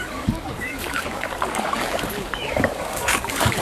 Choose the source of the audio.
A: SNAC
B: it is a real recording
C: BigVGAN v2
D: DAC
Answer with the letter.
D